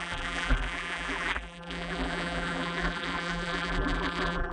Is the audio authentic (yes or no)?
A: no